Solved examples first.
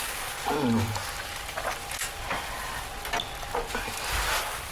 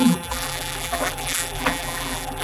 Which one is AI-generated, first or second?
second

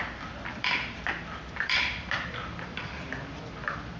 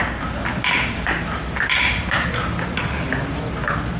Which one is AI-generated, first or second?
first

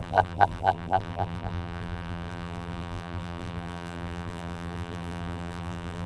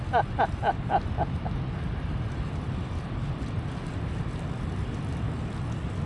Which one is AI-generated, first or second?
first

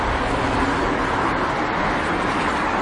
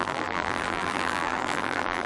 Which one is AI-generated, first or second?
second